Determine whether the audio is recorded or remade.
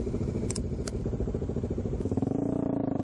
recorded